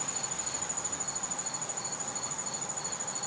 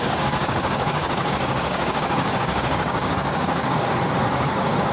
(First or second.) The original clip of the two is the first